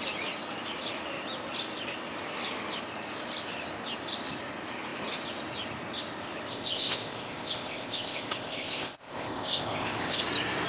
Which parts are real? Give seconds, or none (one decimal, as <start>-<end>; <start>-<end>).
0.0-6.5; 10.2-10.7